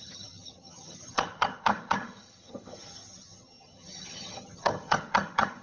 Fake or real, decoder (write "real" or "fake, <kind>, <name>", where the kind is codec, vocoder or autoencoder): fake, vocoder, HiFi-GAN